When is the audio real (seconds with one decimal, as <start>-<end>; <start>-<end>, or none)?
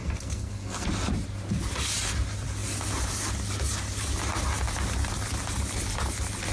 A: 0.9-6.5